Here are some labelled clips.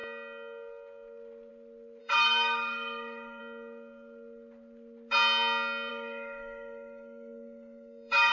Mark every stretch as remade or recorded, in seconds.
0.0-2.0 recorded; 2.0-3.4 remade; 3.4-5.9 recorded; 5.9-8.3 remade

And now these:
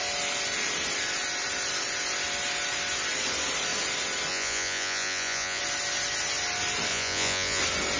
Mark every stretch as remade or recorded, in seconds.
0.0-4.3 recorded; 4.3-5.6 remade; 5.6-6.9 recorded; 6.9-7.6 remade; 7.6-8.0 recorded